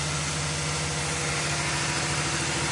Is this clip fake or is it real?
real